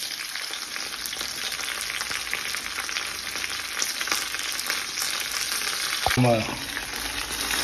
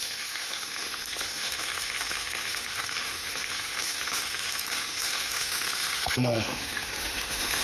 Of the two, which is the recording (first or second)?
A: first